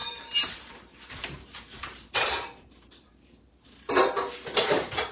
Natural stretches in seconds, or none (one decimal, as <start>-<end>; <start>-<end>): 3.1-5.1